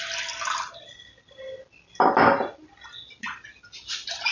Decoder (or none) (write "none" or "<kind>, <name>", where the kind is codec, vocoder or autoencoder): none